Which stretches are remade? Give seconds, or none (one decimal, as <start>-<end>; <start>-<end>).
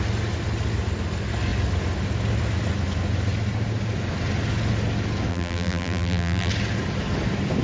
5.3-6.5